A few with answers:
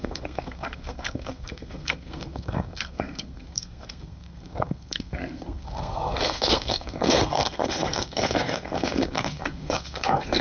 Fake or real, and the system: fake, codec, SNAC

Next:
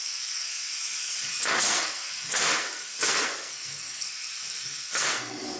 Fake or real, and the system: fake, codec, SNAC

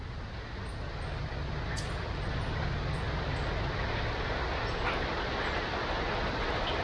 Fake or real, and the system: real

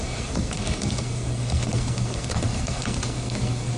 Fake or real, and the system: fake, codec, SNAC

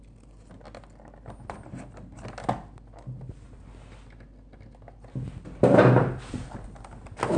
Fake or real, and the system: real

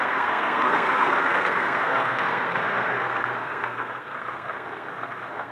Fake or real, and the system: fake, codec, SNAC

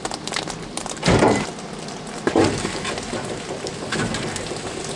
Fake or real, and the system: real